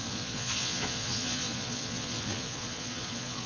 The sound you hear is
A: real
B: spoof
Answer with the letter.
B